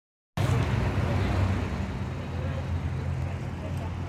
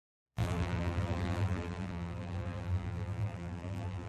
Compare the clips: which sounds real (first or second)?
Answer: first